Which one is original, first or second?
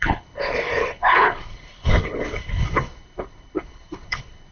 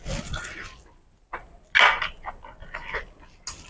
second